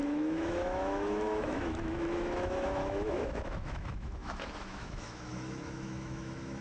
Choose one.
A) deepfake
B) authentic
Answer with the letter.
A